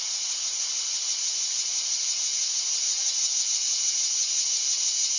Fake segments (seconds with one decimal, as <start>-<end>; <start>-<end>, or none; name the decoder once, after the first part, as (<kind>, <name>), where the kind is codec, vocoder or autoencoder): none